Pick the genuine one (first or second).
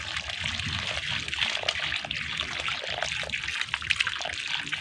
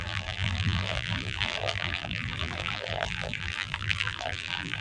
first